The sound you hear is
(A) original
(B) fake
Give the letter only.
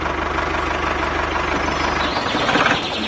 A